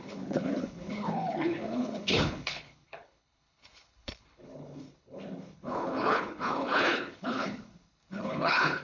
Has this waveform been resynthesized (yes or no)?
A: yes